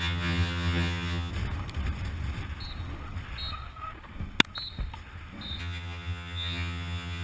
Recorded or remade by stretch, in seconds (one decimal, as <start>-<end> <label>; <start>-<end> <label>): 0.0-1.3 remade; 1.3-5.6 recorded; 5.6-7.2 remade